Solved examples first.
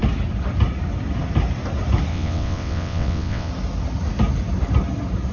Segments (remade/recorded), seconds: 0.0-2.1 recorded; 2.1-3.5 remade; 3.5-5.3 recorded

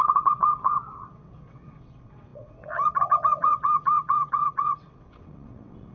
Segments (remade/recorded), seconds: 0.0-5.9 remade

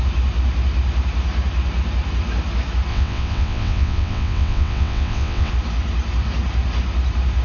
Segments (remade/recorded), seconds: 0.0-2.9 recorded; 2.9-5.5 remade; 5.5-7.4 recorded